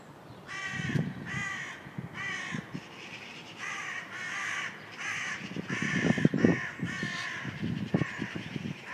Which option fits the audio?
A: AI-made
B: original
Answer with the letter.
B